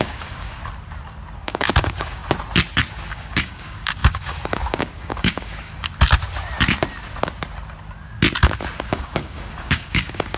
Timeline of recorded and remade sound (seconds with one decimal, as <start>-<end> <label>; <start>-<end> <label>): 0.0-0.6 remade; 0.6-1.4 recorded; 1.4-2.2 remade; 2.2-2.9 recorded; 2.9-5.9 remade; 5.9-8.9 recorded; 8.9-10.4 remade